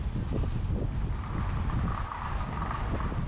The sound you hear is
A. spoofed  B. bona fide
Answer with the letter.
B